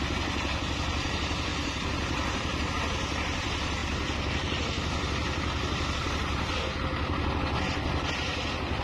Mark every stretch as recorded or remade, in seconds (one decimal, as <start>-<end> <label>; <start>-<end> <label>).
0.0-1.5 recorded; 1.5-2.7 remade; 2.7-8.8 recorded